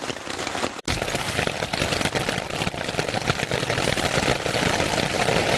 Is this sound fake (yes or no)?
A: no